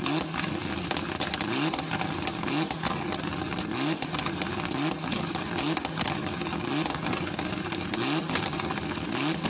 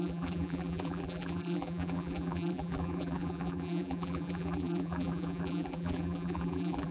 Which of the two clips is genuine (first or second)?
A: first